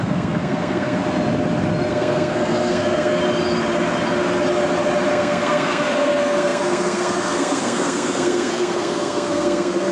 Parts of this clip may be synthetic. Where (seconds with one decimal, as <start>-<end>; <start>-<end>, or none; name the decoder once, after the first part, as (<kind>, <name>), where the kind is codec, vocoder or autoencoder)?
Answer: 0.0-1.0 (codec, SNAC); 1.9-3.2; 5.1-9.9